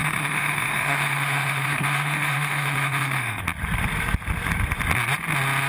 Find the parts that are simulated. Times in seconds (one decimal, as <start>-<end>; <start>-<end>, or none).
0.0-3.4